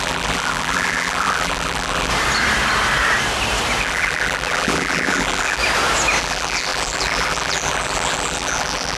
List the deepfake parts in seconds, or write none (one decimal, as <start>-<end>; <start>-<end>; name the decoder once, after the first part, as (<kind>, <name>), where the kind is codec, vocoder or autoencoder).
0.0-2.1 (vocoder, BigVGAN v2); 3.8-5.6; 6.2-9.0